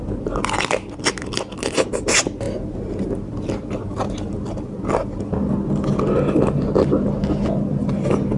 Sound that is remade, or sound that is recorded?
recorded